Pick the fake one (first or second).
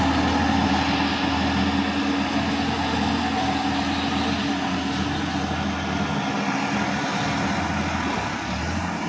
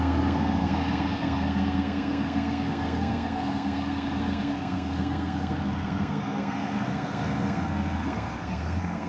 second